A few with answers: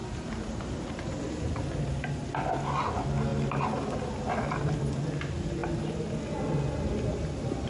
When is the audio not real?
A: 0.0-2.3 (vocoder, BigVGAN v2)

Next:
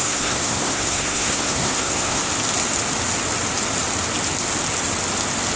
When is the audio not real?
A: 0.0-2.2 (codec, SNAC)